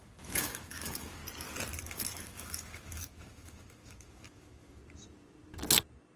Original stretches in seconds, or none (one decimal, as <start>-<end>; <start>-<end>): 1.2-1.8; 4.8-6.2